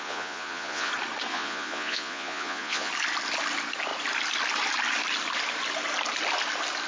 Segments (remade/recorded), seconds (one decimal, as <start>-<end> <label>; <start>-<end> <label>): 0.0-0.9 remade; 0.9-1.3 recorded; 1.3-2.9 remade; 2.9-6.9 recorded